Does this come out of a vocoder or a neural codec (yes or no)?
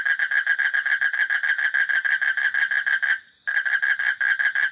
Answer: no